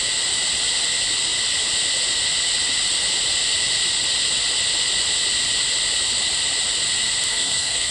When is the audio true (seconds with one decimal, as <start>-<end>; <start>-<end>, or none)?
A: 0.0-7.3